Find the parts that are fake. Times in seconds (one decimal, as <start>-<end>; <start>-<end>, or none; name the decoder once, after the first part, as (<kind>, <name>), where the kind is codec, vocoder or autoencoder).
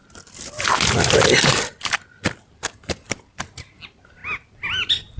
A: none